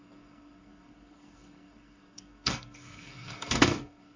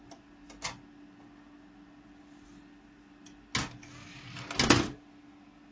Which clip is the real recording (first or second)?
second